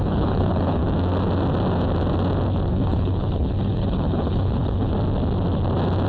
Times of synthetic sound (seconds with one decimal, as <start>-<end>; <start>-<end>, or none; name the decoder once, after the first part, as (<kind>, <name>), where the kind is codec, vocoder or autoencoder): 0.0-0.8 (codec, HILCodec); 2.7-4.9